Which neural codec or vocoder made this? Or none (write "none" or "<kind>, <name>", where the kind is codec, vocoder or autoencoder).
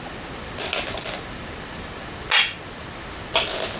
none